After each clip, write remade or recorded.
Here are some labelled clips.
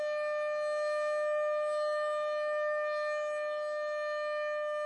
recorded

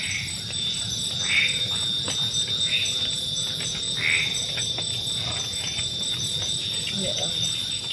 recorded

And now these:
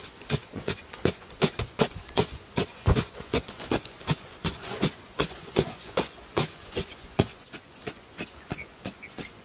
remade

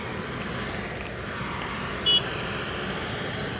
recorded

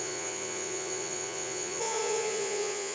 remade